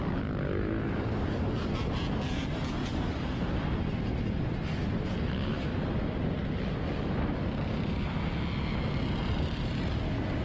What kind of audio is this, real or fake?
real